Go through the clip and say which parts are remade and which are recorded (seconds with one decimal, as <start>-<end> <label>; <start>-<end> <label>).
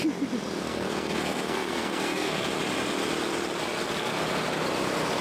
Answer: 0.0-0.6 recorded; 0.6-2.5 remade; 2.5-5.2 recorded